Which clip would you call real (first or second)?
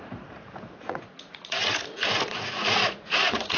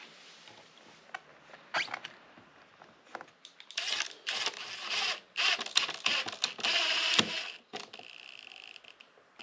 second